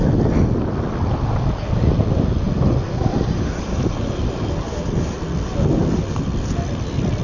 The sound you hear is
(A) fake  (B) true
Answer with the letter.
B